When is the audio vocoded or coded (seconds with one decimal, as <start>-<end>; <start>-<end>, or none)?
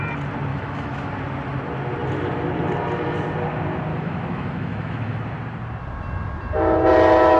0.5-1.1; 3.9-5.2